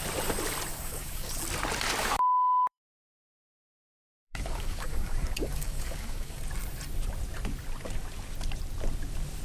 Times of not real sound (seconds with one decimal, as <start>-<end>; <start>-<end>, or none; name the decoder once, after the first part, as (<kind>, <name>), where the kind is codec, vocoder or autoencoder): 0.7-1.3 (codec, DAC); 2.0-6.4